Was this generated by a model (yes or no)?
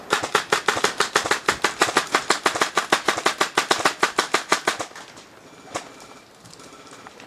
no